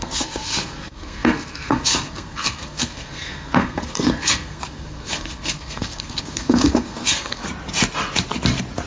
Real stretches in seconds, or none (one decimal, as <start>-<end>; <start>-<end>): 7.4-8.9